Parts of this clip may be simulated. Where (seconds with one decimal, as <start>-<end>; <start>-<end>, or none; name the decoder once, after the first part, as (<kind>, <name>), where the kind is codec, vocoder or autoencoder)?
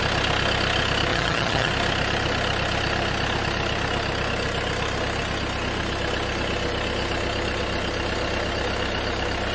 1.1-1.7 (vocoder, HiFi-GAN)